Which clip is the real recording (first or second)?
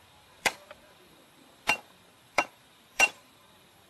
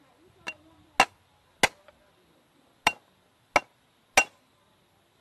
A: second